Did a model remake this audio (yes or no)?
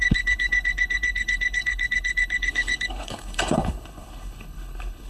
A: yes